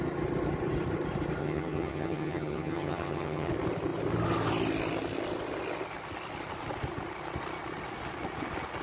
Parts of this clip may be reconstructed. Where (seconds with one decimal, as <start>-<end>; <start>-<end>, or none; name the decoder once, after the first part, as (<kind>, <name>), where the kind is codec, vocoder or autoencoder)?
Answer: 1.4-3.5 (vocoder, HiFi-GAN)